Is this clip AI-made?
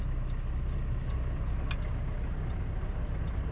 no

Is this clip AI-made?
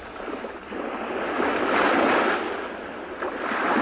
no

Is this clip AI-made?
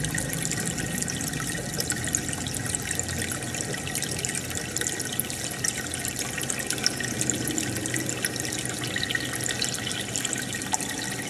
no